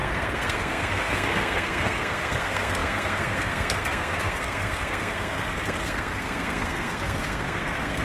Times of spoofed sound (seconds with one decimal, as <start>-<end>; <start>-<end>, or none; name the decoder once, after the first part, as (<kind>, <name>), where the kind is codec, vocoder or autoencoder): 0.0-8.0 (codec, SNAC)